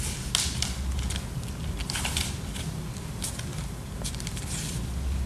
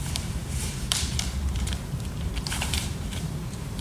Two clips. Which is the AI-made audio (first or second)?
second